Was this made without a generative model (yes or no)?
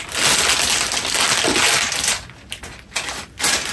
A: yes